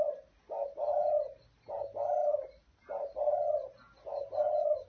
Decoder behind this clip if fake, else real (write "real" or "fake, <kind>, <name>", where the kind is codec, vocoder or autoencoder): real